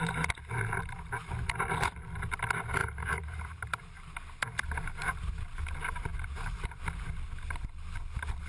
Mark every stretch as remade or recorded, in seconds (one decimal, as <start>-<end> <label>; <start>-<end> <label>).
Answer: 0.0-2.8 recorded; 2.8-4.2 remade; 4.2-6.1 recorded; 6.1-6.8 remade; 6.8-8.5 recorded